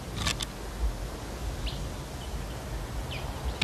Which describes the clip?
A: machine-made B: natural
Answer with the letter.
B